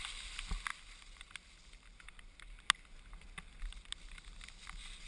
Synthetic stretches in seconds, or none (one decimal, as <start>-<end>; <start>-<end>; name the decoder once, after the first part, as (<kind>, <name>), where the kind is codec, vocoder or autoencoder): none